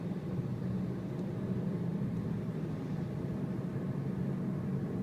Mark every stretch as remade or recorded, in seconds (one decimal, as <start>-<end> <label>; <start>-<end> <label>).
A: 0.0-5.0 recorded